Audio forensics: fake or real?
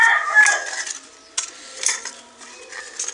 real